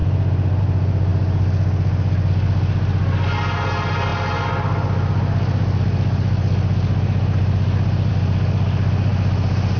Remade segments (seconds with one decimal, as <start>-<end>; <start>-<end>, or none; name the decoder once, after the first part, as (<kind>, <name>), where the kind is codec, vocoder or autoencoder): none